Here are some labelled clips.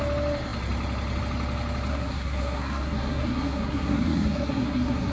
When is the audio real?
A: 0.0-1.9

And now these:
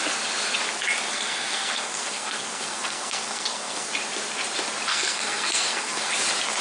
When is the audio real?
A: 0.0-1.1; 3.9-4.9; 6.1-6.6

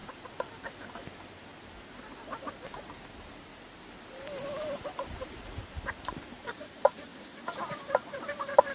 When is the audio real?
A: 0.0-1.4; 3.5-5.6; 7.1-7.7

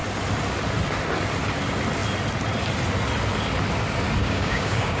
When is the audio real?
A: 0.0-4.2

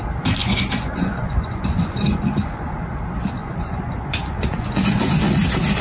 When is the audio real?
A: 0.0-0.4; 2.8-3.4; 5.2-5.8

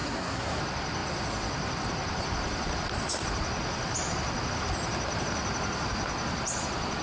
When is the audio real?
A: 0.6-7.0

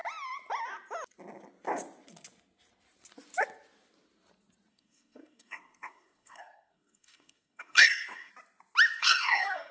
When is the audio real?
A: 0.0-4.7; 8.3-9.0